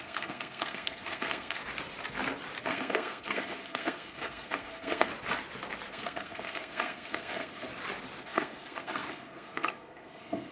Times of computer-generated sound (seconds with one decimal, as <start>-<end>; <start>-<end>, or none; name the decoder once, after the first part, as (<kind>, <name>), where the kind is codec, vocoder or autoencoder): 0.0-1.6 (codec, SNAC); 2.6-5.1; 5.9-7.7; 8.2-10.5

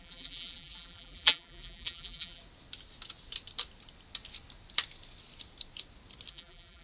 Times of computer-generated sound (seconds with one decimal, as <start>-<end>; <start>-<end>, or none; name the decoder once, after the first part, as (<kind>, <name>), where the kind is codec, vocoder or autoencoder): 0.0-2.4 (vocoder, BigVGAN v2); 6.3-6.8

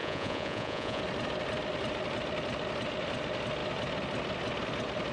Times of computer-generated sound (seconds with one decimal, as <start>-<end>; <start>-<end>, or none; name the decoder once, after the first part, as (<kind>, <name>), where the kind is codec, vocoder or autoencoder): 0.0-1.0 (vocoder, Vocos)